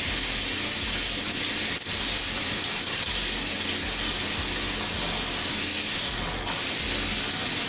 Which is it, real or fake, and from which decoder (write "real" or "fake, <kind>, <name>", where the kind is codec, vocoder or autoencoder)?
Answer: real